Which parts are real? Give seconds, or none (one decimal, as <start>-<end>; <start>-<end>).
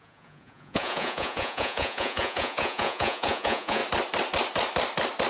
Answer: 3.8-5.3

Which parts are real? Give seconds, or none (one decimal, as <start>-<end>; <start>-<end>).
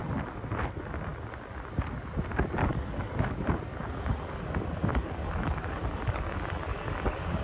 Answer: 0.0-2.6; 3.3-4.9; 6.2-6.7